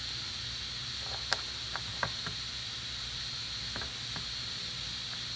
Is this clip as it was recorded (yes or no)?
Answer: yes